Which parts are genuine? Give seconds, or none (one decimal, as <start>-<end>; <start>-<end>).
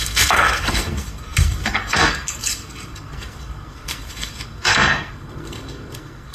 none